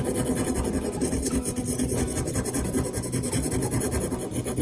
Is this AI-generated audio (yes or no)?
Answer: no